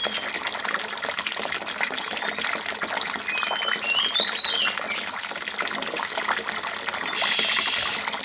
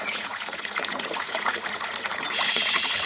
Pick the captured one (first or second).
first